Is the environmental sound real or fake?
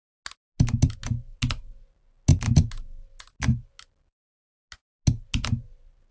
real